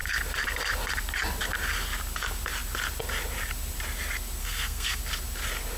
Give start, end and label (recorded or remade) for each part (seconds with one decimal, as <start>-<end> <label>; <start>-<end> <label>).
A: 0.0-4.4 recorded; 4.4-5.0 remade; 5.0-5.8 recorded